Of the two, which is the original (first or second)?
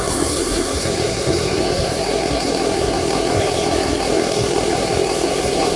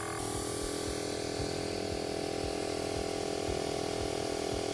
second